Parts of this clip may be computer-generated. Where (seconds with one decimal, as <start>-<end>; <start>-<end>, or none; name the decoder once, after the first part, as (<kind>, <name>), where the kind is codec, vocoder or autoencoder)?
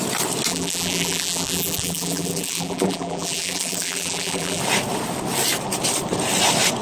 0.5-4.6 (vocoder, BigVGAN v2)